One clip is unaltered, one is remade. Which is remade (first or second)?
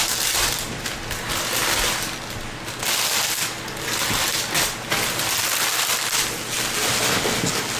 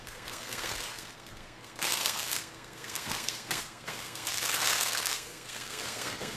second